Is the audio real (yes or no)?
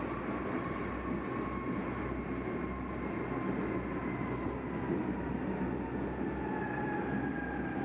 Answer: yes